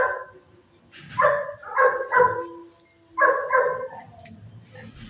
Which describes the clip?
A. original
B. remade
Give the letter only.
A